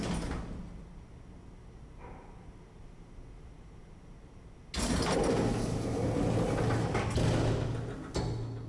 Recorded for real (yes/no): yes